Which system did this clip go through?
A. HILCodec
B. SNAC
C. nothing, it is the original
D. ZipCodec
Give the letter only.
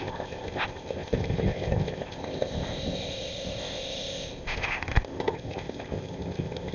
D